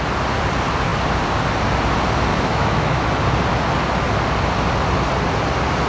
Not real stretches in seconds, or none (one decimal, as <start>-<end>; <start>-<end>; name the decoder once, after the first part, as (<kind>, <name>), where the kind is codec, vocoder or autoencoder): 2.3-3.0 (autoencoder, DAC-VAE)